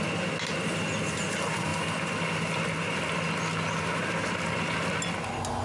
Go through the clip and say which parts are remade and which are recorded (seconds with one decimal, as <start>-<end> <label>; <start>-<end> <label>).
0.0-5.6 recorded